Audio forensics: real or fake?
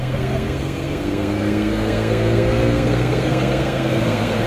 fake